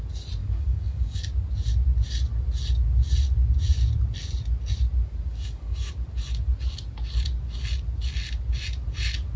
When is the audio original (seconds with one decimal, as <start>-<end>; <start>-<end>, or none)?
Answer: 0.0-0.4; 1.2-5.3; 5.9-9.4